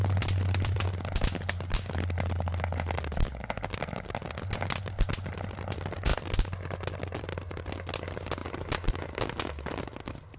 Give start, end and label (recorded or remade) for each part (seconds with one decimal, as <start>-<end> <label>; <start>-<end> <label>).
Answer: 0.0-0.8 remade; 0.8-10.4 recorded